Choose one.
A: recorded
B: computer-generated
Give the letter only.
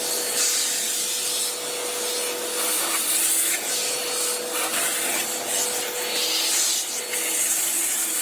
A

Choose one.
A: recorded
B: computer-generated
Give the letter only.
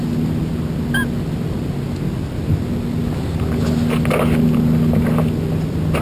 A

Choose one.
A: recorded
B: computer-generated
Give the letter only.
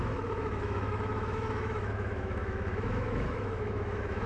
B